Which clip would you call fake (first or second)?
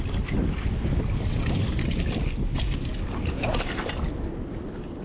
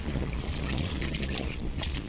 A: second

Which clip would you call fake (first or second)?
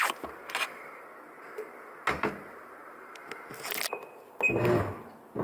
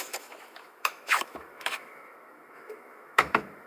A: second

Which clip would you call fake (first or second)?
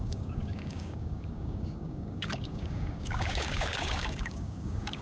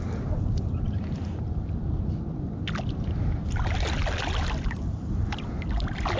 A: first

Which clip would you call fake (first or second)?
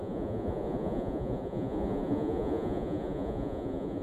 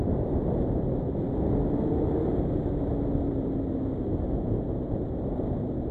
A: first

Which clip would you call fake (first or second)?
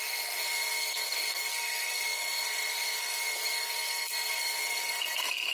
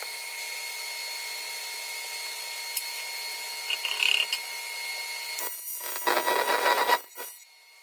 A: first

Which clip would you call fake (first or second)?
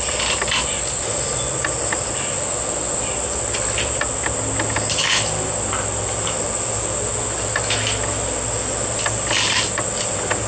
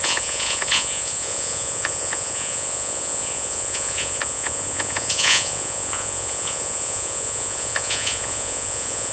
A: second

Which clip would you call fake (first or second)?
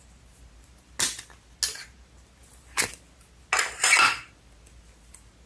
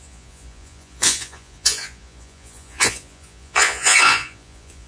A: second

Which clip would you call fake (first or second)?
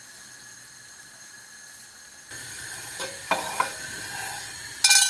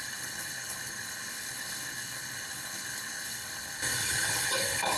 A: second